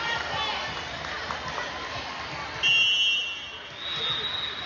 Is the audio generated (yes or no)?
no